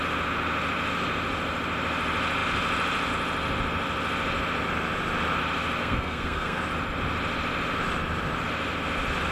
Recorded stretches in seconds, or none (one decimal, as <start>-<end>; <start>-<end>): 0.0-5.8; 6.6-9.3